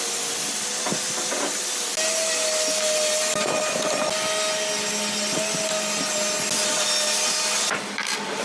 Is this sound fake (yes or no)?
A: no